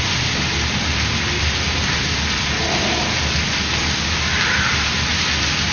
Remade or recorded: recorded